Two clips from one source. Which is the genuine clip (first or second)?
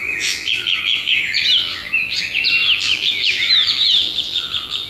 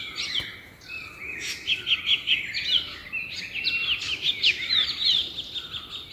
second